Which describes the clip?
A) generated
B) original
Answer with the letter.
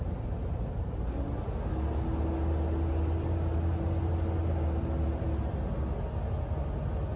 B